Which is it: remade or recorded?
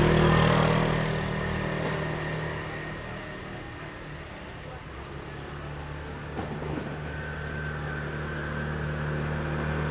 recorded